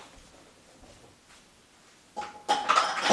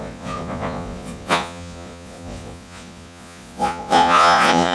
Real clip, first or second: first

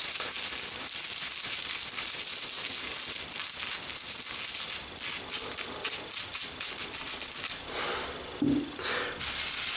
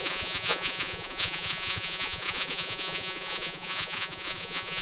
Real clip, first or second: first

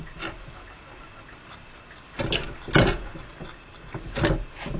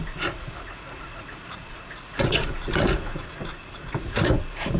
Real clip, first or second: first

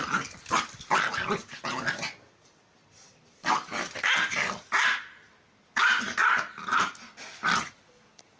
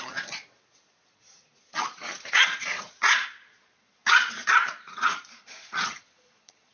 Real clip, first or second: first